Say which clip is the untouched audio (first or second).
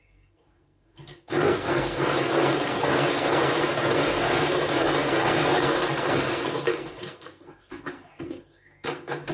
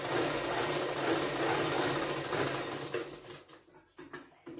second